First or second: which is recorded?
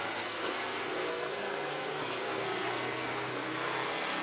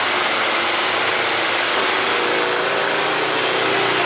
second